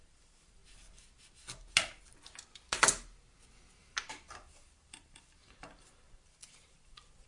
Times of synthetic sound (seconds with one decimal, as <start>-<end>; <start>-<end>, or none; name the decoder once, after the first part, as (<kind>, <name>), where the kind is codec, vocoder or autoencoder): 0.0-0.6 (vocoder, BigVGAN v2); 3.7-7.3